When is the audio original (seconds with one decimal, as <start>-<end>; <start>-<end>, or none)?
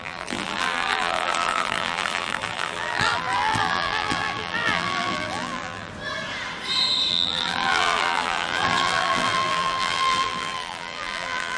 5.9-7.1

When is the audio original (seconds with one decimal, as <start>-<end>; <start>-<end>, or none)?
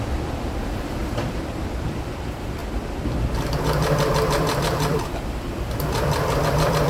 none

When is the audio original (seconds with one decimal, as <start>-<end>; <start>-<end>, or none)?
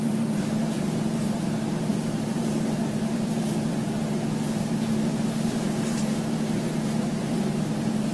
none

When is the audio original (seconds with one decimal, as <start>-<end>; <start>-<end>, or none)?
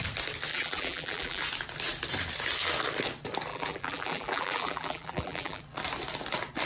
0.0-0.5; 1.4-3.5; 5.6-6.7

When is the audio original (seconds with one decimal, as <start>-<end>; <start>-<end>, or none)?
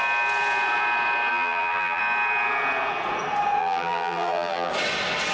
0.0-1.3; 2.0-3.6; 4.7-5.3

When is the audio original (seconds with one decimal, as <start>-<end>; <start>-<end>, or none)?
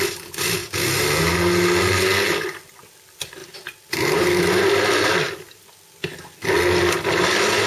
0.0-3.4; 5.7-7.7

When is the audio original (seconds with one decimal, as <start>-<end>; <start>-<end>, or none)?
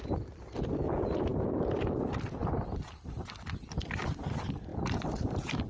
0.0-2.4; 4.0-5.7